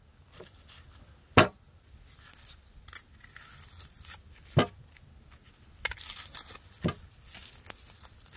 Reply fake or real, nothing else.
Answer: real